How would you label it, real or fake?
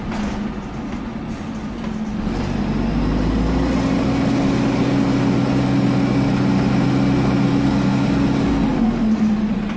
real